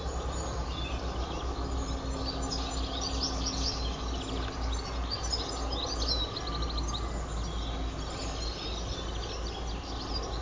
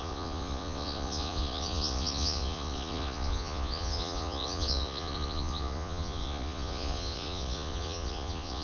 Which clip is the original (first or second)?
first